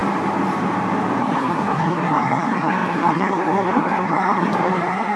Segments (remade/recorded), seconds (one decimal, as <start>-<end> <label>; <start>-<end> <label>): 0.0-1.2 recorded; 1.2-5.2 remade